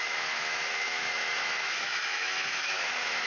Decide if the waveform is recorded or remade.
remade